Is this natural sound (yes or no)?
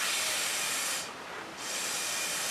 no